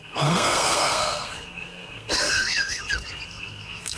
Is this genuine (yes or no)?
no